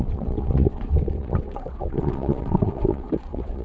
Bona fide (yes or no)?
no